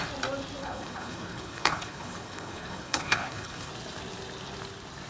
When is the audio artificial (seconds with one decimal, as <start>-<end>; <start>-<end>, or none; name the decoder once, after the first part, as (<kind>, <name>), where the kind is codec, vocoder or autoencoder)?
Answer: 0.6-3.7 (codec, HILCodec)